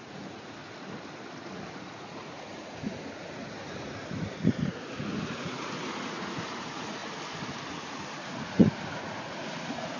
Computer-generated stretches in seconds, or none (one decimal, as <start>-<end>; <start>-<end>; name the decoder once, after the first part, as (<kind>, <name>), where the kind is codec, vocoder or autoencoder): 0.0-0.6 (vocoder, Vocos); 1.7-7.0; 7.7-10.0